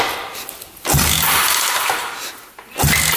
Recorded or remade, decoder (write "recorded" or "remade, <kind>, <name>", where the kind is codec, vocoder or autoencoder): recorded